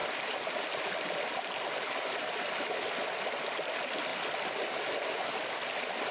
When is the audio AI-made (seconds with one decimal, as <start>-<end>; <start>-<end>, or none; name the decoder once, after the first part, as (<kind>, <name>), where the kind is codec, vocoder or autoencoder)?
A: none